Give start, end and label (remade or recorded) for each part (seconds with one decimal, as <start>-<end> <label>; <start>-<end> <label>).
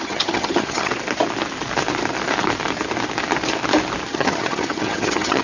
0.0-0.9 remade; 0.9-4.1 recorded; 4.1-5.4 remade